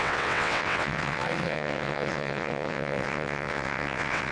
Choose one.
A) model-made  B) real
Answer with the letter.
A